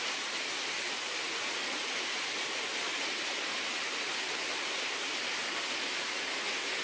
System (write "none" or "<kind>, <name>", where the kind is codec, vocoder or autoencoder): none